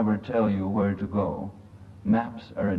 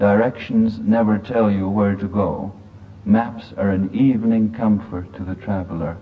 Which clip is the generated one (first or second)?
first